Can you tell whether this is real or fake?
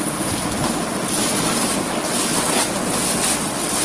real